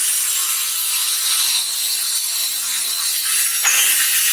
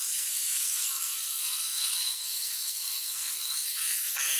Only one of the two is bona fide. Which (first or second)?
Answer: first